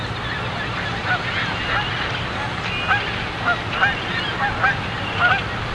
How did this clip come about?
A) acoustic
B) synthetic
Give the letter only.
A